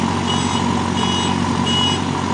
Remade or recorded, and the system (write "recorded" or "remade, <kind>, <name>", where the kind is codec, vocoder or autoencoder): recorded